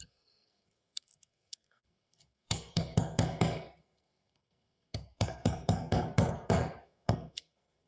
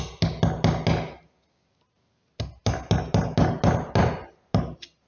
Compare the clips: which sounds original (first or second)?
second